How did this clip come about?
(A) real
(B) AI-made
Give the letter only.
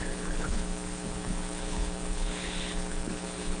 B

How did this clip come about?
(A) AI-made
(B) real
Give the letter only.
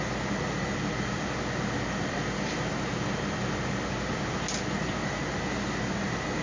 B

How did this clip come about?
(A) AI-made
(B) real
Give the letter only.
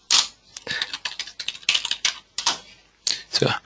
B